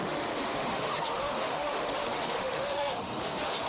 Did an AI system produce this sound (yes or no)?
yes